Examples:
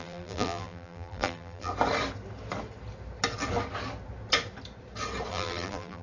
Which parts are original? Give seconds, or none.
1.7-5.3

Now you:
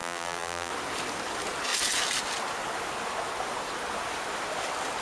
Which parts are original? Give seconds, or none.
0.7-5.0

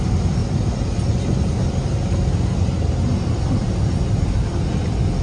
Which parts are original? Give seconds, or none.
0.4-3.5

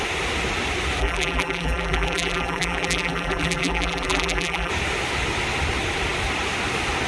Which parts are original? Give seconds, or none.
0.0-1.0; 4.7-7.1